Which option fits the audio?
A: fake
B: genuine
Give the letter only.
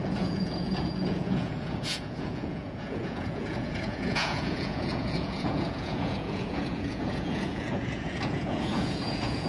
A